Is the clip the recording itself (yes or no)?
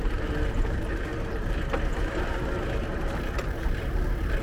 yes